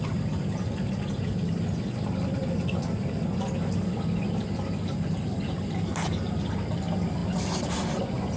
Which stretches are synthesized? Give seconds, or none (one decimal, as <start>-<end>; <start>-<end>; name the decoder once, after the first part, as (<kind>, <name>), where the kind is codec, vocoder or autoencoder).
none